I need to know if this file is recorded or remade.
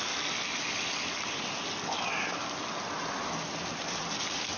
recorded